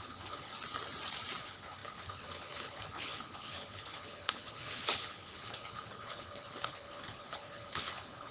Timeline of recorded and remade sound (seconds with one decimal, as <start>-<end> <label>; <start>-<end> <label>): 0.0-0.5 remade; 0.5-1.4 recorded; 1.4-8.3 remade